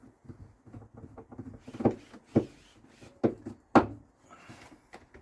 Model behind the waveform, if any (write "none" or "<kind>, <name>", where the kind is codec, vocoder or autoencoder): none